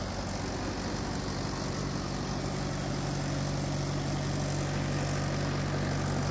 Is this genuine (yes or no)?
yes